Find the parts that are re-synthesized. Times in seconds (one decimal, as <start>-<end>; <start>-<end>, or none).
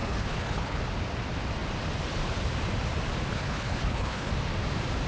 0.0-0.8; 3.3-4.3